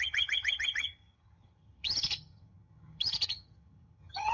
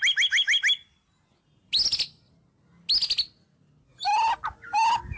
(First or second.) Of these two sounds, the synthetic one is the first